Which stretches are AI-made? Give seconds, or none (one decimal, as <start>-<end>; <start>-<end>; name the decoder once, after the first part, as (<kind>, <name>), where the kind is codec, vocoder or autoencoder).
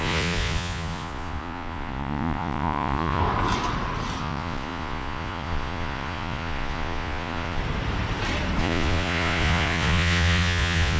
0.0-3.2 (vocoder, Vocos); 4.2-7.6; 8.6-11.0